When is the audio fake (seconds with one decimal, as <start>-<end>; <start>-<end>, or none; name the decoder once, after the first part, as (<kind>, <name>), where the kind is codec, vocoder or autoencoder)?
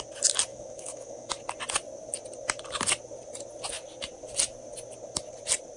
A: 0.5-1.3 (autoencoder, DAC-VAE)